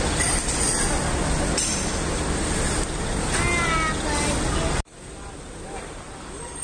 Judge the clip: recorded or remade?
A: recorded